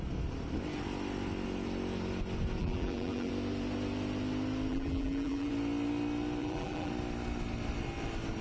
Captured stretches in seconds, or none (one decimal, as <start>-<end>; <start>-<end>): 0.0-2.6; 3.3-4.7; 5.5-6.4; 6.9-8.4